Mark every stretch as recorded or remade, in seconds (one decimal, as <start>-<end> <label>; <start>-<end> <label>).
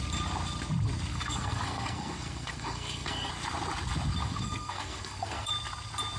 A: 0.0-1.1 recorded; 1.1-3.3 remade; 3.3-4.2 recorded; 4.2-5.5 remade; 5.5-6.2 recorded